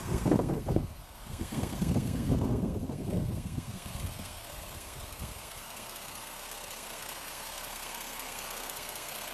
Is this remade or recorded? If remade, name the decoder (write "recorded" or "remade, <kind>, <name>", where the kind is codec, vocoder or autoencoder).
remade, codec, SNAC